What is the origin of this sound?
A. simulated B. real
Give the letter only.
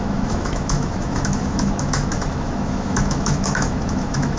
A